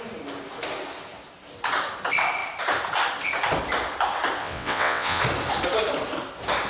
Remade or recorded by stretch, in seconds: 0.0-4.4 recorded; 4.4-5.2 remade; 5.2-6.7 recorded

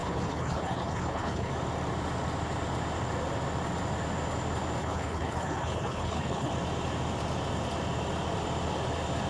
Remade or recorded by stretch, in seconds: 0.0-1.5 remade; 1.5-4.8 recorded; 4.8-6.5 remade; 6.5-9.3 recorded

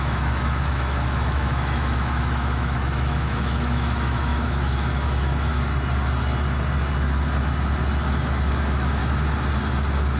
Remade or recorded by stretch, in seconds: 0.0-5.5 remade; 5.5-8.5 recorded; 8.5-9.0 remade; 9.0-10.2 recorded

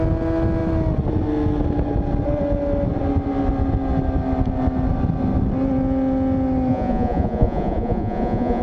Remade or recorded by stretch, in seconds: 0.0-6.7 recorded; 6.7-8.6 remade

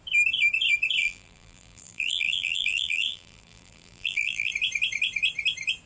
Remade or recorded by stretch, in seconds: 0.0-1.0 recorded; 1.0-4.5 remade; 4.5-5.9 recorded

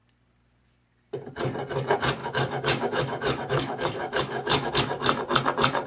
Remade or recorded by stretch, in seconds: 0.0-2.2 recorded; 2.2-4.7 remade; 4.7-5.9 recorded

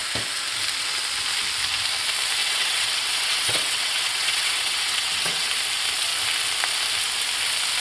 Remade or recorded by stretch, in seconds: 0.0-2.4 recorded; 2.4-5.5 remade; 5.5-7.8 recorded

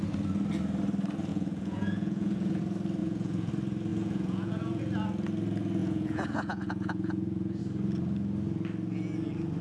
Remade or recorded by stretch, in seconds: 0.0-1.3 recorded; 1.3-2.6 remade; 2.6-3.0 recorded; 3.0-3.5 remade; 3.5-3.9 recorded; 3.9-4.8 remade; 4.8-5.8 recorded; 5.8-7.6 remade; 7.6-9.6 recorded